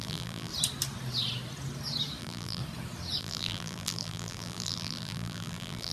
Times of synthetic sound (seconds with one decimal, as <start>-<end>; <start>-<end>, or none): 0.0-0.5; 2.2-2.6; 3.2-5.9